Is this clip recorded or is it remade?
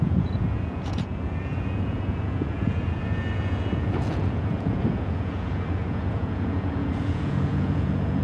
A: remade